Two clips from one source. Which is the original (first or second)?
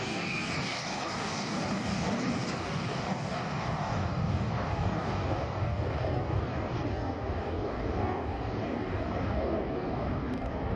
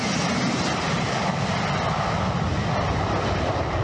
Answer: second